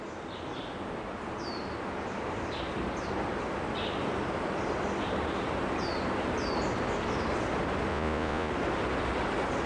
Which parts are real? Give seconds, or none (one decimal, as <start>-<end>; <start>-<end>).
0.0-7.9; 8.5-9.7